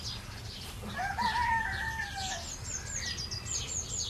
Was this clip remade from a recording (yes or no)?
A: no